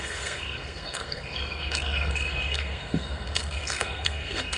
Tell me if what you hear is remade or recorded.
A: remade